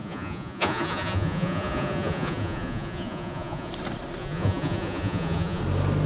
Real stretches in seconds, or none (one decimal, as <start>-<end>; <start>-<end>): 3.7-4.2; 5.6-6.1